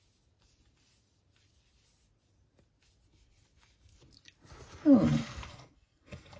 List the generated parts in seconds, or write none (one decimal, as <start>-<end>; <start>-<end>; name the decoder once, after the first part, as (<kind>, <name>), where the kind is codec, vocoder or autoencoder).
5.2-6.4 (codec, SNAC)